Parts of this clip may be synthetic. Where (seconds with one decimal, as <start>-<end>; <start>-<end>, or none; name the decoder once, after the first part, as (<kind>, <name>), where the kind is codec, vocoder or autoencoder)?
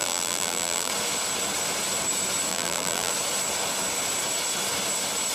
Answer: 0.0-0.9 (vocoder, BigVGAN v2); 2.5-3.1